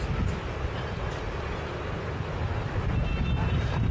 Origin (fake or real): real